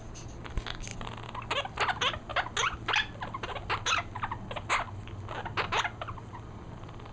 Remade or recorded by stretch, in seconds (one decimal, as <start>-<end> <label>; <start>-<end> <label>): 0.0-7.1 recorded